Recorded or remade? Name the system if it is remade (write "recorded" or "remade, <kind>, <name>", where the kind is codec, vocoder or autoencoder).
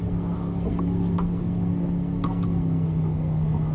remade, codec, SNAC